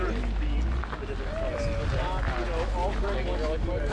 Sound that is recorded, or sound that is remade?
recorded